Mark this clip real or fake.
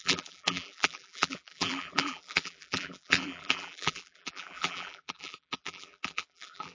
fake